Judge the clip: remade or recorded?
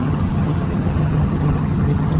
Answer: remade